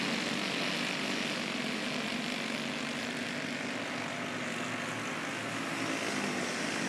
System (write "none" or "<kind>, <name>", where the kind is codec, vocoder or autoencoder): none